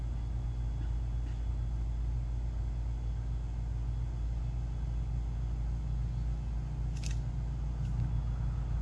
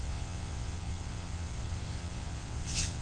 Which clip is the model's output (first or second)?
second